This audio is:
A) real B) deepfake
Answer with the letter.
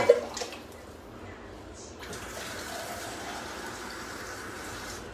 A